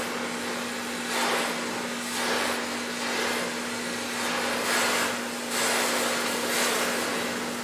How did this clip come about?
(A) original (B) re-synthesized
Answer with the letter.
A